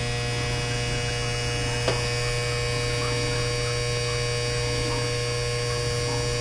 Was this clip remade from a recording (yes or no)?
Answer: no